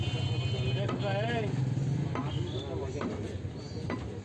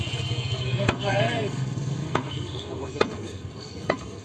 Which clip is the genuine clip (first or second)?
first